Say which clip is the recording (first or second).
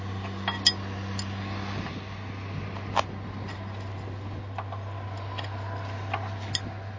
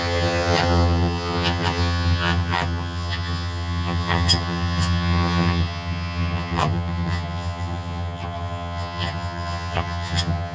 first